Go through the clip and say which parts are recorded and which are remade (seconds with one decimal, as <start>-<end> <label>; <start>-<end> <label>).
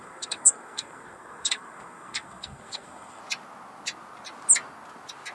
0.0-3.2 remade; 3.2-5.3 recorded